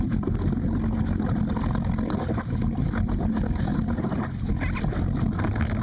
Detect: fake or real real